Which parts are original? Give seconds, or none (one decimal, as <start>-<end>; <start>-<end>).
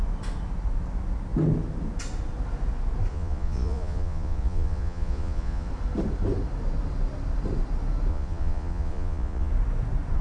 0.0-3.1; 5.7-8.1; 9.5-10.2